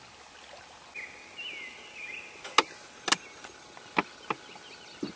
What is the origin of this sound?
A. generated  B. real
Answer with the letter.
B